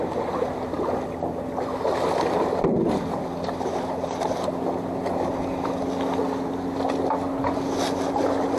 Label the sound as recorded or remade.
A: recorded